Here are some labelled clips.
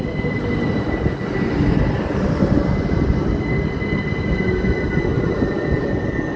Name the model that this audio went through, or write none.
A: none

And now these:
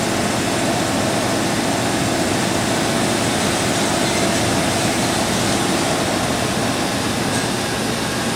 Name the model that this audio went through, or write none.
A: none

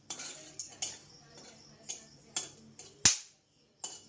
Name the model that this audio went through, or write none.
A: none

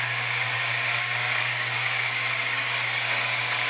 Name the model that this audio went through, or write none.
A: codec, DAC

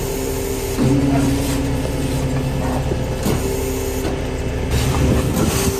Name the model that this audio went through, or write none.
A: none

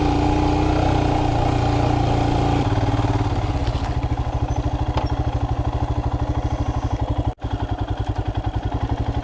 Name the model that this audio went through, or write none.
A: none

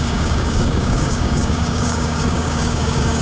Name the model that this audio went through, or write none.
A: codec, DAC